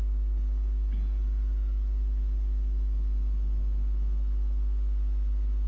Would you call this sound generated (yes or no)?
no